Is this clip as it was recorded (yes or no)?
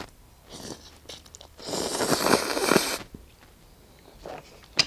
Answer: yes